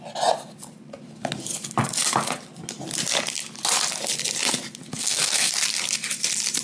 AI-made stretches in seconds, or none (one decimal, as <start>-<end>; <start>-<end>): 4.9-5.5